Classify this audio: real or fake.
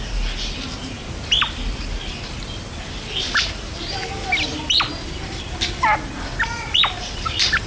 real